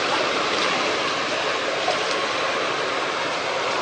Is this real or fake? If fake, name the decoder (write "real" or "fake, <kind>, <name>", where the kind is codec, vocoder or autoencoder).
real